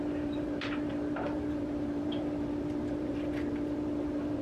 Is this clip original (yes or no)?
no